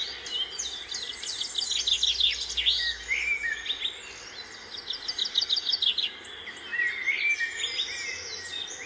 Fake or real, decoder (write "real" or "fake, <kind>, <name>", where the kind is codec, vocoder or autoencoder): real